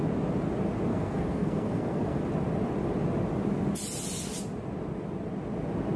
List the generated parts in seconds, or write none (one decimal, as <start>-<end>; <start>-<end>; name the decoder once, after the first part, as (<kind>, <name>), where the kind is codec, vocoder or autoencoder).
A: 0.9-2.2 (codec, SNAC)